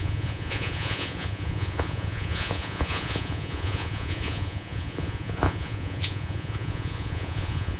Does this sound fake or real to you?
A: fake